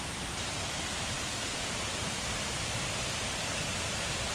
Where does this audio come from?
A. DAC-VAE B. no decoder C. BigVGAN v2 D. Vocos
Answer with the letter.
B